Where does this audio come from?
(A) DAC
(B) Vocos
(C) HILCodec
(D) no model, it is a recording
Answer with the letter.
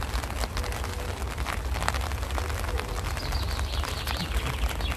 D